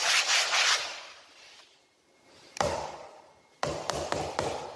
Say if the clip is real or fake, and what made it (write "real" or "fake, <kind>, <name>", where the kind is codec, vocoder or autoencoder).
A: real